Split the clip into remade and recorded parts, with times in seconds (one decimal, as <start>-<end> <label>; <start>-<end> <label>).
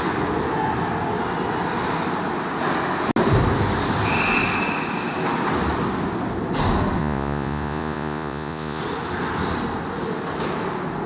0.0-7.0 recorded; 7.0-8.8 remade; 8.8-11.1 recorded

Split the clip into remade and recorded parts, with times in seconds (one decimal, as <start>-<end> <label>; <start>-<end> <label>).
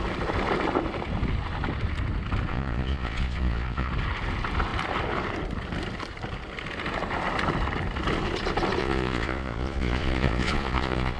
0.0-2.5 recorded; 2.5-3.9 remade; 3.9-8.8 recorded; 8.8-11.2 remade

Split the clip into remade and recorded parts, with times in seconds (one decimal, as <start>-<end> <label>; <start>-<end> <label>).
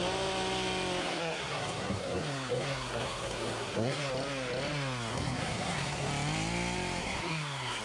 0.0-1.0 recorded; 1.0-4.1 remade; 4.1-5.1 recorded; 5.1-6.1 remade; 6.1-7.0 recorded; 7.0-7.8 remade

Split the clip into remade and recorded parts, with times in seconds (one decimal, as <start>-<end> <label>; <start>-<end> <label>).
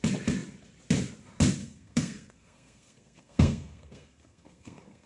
0.0-1.6 recorded; 1.6-5.1 remade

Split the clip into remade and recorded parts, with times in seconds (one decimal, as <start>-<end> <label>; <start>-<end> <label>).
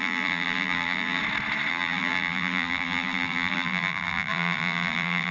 0.0-1.2 remade; 1.2-1.7 recorded; 1.7-5.3 remade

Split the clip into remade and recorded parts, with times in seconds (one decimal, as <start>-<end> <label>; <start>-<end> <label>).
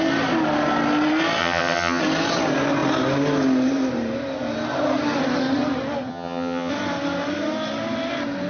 0.0-1.4 recorded; 1.4-2.0 remade; 2.0-6.1 recorded; 6.1-6.7 remade; 6.7-8.5 recorded